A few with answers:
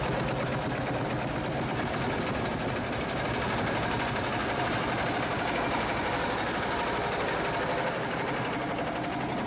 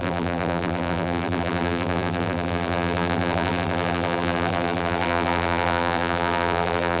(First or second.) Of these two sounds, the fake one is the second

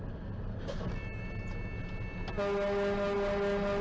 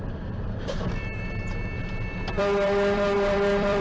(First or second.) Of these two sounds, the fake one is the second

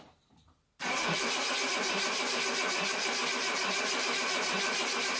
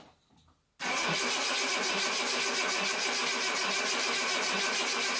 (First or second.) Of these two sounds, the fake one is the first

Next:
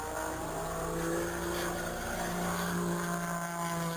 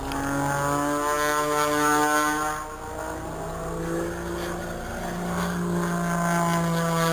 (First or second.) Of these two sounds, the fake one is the first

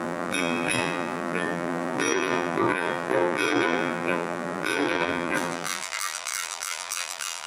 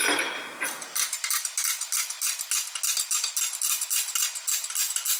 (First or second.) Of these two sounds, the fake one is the first